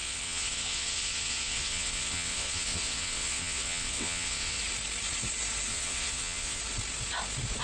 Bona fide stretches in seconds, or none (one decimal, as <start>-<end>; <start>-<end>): 4.6-5.7; 6.6-7.6